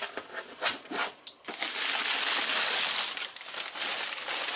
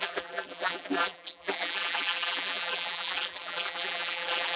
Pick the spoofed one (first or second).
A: second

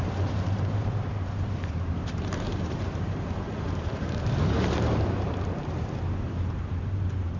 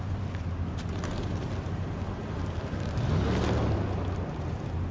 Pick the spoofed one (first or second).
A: first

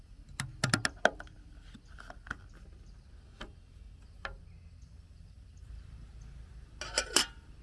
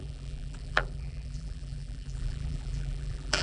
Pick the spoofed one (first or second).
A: second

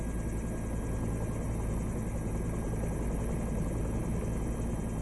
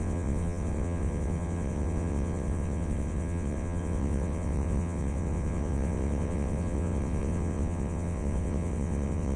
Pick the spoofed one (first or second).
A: second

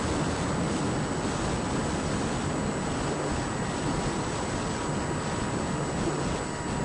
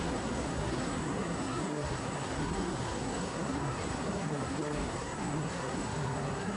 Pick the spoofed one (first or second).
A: second